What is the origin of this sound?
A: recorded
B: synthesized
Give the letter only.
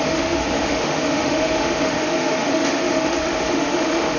B